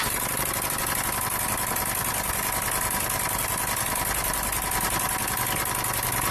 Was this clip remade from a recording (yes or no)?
no